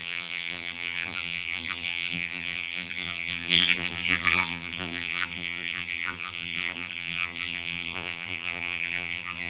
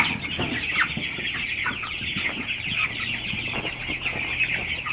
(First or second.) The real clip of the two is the second